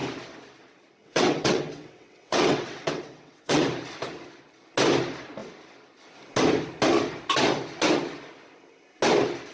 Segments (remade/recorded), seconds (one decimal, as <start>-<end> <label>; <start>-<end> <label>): 0.0-1.0 recorded; 1.0-3.6 remade; 3.6-9.5 recorded

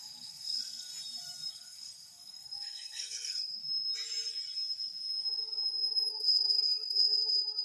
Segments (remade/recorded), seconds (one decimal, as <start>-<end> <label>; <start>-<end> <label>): 0.0-0.9 remade; 0.9-1.5 recorded; 1.5-3.6 remade; 3.6-6.1 recorded; 6.1-7.6 remade